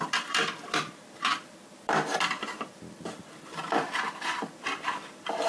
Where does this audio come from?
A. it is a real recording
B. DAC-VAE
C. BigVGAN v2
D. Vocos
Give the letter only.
C